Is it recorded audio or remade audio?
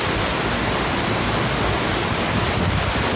recorded